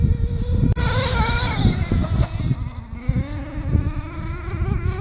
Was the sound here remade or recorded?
recorded